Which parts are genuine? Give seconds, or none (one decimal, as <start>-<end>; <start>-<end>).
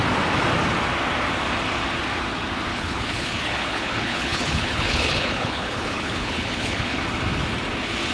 0.0-2.7; 7.0-8.1